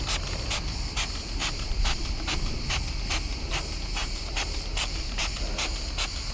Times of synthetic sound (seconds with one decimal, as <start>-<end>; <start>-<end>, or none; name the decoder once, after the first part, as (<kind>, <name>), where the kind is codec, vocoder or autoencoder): 1.4-2.6 (vocoder, BigVGAN v2); 4.0-5.4